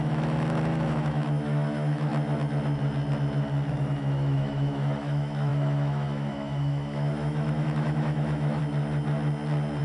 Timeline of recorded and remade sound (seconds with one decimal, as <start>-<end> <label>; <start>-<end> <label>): 0.0-2.1 remade; 2.1-3.7 recorded; 3.7-8.6 remade; 8.6-9.8 recorded